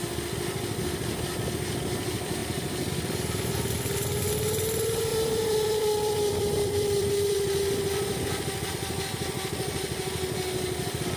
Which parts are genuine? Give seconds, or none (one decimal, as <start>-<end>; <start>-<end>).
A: 0.0-2.4; 2.9-5.1; 8.7-11.2